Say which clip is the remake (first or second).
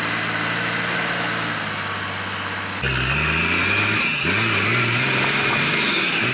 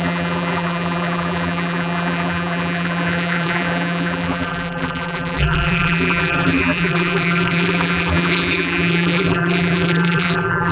second